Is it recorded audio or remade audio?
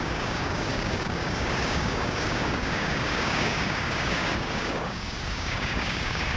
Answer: remade